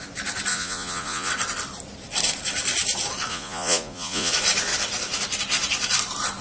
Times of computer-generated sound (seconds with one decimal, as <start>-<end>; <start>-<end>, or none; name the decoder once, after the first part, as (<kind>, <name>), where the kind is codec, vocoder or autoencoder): 0.5-1.3 (vocoder, Vocos); 3.3-4.3